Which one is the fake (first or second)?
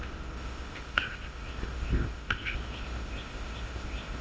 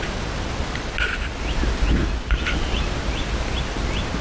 first